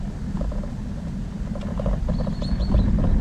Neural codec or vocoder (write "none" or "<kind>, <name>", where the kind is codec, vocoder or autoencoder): none